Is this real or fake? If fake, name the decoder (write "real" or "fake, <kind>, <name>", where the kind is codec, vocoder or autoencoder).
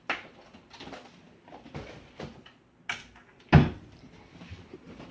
real